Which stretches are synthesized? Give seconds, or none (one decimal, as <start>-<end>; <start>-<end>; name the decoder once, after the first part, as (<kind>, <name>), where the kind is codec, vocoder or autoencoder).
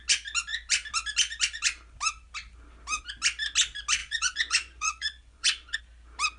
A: 4.0-5.8 (vocoder, Vocos)